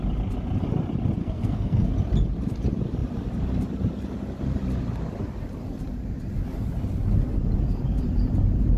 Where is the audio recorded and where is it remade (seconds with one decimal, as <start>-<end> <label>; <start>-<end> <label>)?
0.0-1.2 recorded; 1.2-1.9 remade; 1.9-8.8 recorded